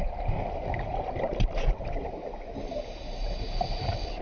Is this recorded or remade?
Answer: recorded